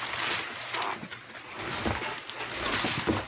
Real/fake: real